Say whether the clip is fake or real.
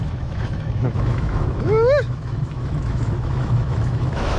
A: fake